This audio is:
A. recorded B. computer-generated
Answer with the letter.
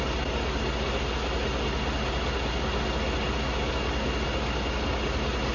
A